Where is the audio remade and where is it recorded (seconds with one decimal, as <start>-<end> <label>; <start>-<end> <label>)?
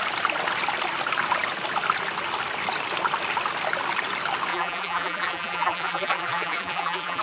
0.0-4.5 recorded; 4.5-7.2 remade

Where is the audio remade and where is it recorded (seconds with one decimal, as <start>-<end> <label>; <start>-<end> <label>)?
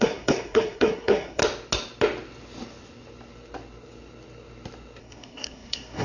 0.0-1.4 remade; 1.4-5.0 recorded; 5.0-6.0 remade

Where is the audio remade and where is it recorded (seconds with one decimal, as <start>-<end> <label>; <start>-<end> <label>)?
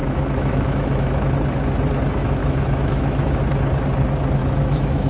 0.0-1.3 remade; 1.3-2.4 recorded; 2.4-3.4 remade; 3.4-4.4 recorded; 4.4-5.1 remade